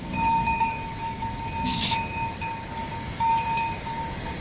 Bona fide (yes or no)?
no